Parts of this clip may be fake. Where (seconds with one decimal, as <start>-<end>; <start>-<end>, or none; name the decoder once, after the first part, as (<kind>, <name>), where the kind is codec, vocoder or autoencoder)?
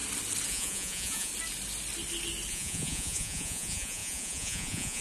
0.5-1.3 (vocoder, Vocos); 2.5-5.0